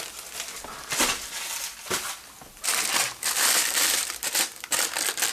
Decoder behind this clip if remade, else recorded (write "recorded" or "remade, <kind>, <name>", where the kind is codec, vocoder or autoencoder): recorded